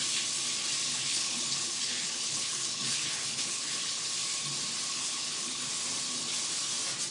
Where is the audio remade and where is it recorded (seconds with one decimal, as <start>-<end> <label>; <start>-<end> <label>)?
0.0-0.9 recorded; 0.9-4.1 remade; 4.1-4.9 recorded; 4.9-5.7 remade; 5.7-7.1 recorded

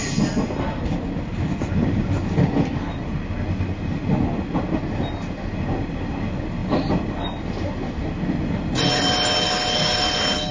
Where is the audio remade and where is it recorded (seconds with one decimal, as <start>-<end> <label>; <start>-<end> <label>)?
0.0-10.5 recorded

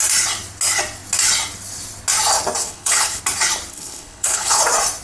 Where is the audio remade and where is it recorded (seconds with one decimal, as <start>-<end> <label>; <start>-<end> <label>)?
0.0-2.6 recorded; 2.6-3.2 remade; 3.2-3.7 recorded; 3.7-4.6 remade; 4.6-5.0 recorded

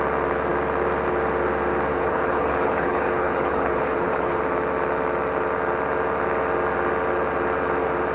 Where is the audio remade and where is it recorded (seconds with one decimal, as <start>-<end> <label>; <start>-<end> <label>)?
0.0-1.9 recorded; 1.9-4.4 remade; 4.4-8.1 recorded